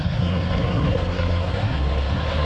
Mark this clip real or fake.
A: fake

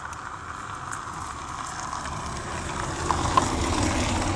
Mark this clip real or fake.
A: real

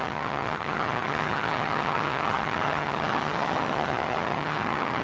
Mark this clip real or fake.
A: fake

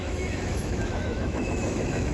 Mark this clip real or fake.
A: fake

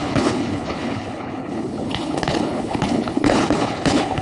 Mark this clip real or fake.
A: fake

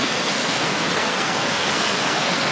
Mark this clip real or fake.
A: fake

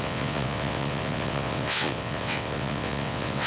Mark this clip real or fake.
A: fake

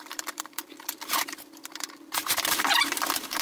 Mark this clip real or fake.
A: fake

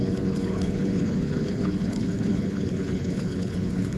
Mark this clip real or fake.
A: fake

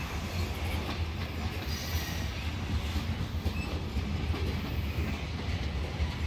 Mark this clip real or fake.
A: real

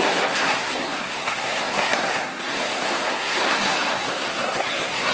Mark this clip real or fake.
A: fake